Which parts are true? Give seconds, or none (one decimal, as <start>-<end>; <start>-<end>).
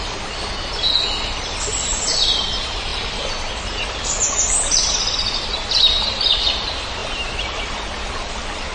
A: 0.0-8.7